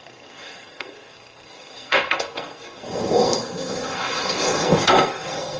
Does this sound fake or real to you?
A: fake